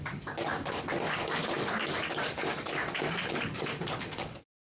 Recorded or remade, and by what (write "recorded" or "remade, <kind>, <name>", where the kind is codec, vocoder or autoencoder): remade, codec, DAC